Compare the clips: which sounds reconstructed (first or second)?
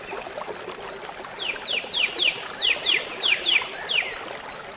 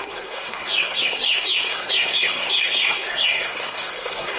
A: second